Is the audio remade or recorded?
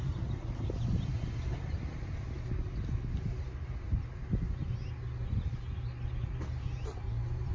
recorded